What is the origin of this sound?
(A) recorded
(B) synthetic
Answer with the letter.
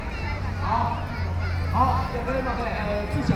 A